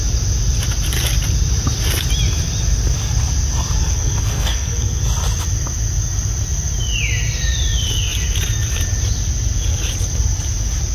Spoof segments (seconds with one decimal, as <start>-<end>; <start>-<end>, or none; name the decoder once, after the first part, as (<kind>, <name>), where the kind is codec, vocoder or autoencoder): 3.8-5.0 (codec, SNAC)